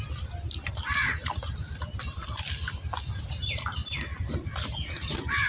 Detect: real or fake real